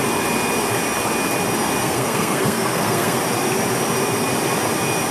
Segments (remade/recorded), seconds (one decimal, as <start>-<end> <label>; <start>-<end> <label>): 0.0-1.8 recorded; 1.8-3.2 remade; 3.2-5.1 recorded